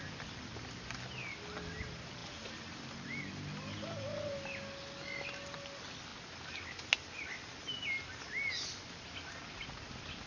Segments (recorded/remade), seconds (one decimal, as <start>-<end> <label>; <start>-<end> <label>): 0.0-10.3 recorded